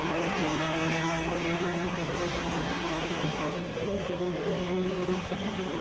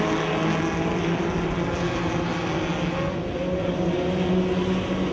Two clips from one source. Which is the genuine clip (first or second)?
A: second